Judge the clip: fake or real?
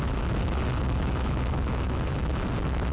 fake